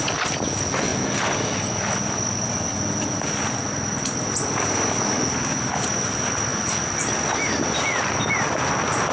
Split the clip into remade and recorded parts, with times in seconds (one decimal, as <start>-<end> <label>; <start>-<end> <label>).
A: 0.0-9.1 recorded